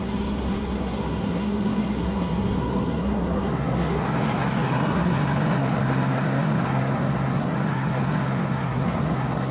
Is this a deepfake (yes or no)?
yes